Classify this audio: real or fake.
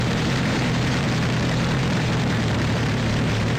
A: fake